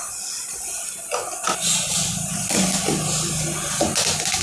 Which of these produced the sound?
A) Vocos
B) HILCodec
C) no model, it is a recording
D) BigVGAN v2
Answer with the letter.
C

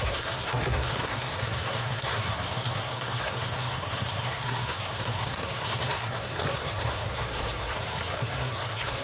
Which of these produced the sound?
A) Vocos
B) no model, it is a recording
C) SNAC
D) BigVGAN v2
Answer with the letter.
C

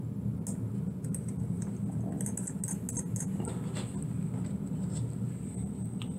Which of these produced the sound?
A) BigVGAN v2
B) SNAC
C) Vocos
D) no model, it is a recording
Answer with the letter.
D